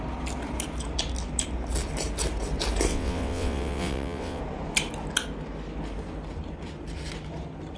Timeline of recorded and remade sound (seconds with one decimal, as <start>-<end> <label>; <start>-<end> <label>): 0.0-2.9 recorded; 2.9-4.4 remade; 4.4-7.8 recorded